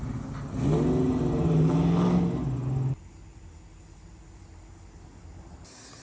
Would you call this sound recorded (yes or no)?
yes